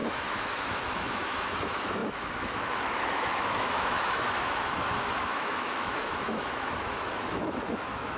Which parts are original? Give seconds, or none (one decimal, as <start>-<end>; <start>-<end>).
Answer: none